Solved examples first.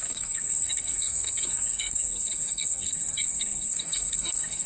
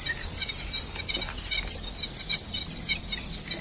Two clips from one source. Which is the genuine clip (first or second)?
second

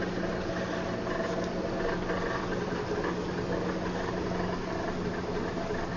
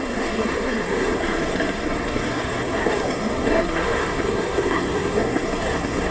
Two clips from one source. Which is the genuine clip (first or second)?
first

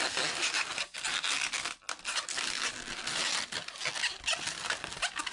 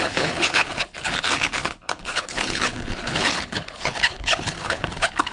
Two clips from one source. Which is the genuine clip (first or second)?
first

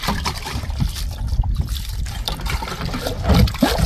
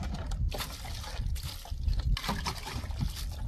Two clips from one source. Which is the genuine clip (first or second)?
second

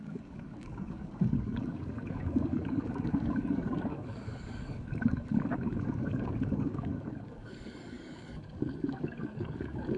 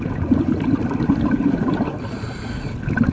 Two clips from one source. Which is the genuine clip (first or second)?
second